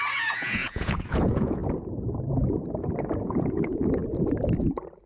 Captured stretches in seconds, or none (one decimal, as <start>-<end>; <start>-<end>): 1.6-3.0; 4.0-5.1